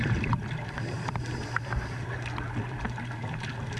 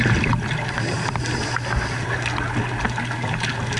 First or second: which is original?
second